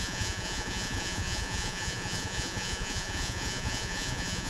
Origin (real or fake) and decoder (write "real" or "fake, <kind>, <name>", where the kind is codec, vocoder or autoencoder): fake, vocoder, Vocos